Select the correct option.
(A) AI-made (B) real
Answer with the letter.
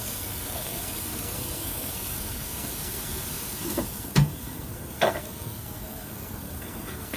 A